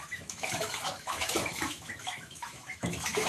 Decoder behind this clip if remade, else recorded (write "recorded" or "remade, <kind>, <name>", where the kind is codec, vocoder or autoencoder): remade, autoencoder, DAC-VAE